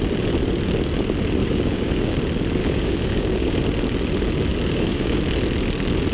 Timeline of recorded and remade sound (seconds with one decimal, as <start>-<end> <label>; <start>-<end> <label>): 0.0-1.4 recorded; 1.4-2.2 remade; 2.2-2.6 recorded; 2.6-3.6 remade; 3.6-4.5 recorded; 4.5-5.2 remade; 5.2-6.1 recorded